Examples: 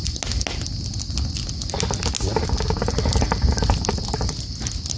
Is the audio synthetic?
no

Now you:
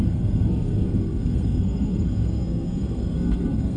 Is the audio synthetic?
yes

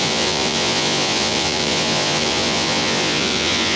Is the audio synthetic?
yes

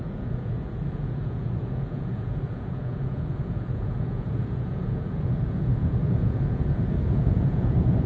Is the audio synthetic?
yes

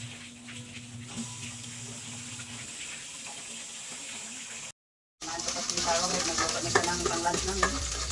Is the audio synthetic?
no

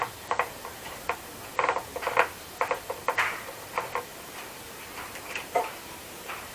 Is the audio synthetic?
yes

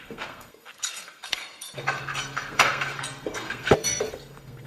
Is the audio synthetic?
yes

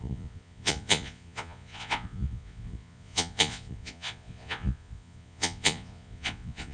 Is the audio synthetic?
yes